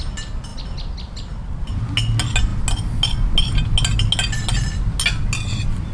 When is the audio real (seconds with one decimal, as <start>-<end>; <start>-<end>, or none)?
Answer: 0.0-5.9